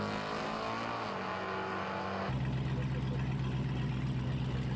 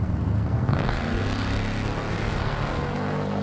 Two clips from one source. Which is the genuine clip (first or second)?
first